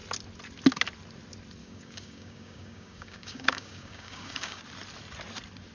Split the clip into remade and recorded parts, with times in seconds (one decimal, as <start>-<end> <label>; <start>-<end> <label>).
0.0-1.6 recorded; 1.6-4.6 remade; 4.6-5.7 recorded